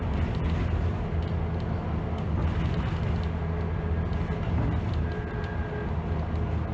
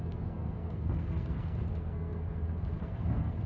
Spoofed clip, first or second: second